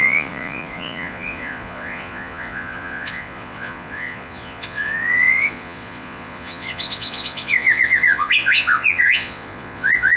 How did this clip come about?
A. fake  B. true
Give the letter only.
A